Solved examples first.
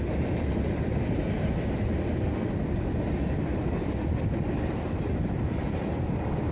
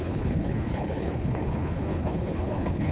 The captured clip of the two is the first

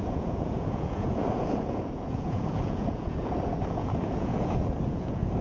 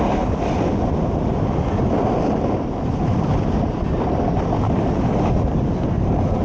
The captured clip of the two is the second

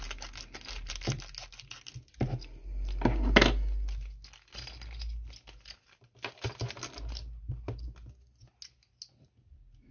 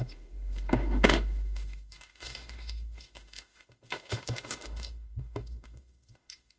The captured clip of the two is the first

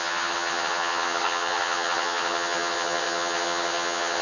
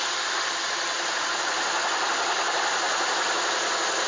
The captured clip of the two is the second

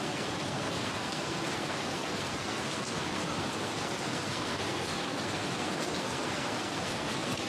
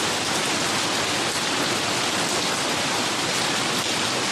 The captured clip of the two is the second